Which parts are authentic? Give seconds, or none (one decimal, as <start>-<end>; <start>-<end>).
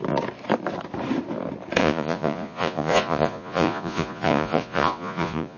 0.0-1.8